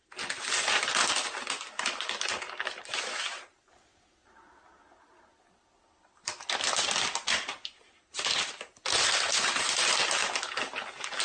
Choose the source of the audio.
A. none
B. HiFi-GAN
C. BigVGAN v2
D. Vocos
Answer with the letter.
A